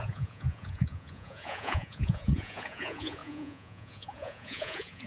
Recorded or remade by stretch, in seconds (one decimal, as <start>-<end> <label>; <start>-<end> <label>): 0.0-5.1 remade